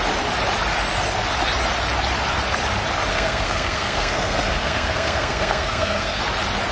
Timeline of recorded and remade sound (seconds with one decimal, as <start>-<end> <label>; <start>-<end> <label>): 0.0-3.1 recorded; 3.1-6.2 remade; 6.2-6.7 recorded